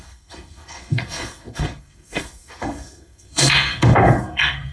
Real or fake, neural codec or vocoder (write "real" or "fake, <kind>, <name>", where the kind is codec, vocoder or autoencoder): fake, codec, SNAC